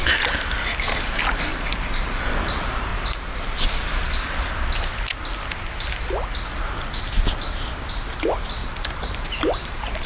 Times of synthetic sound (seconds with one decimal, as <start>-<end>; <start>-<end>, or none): 1.5-2.2; 2.9-4.2; 8.6-10.1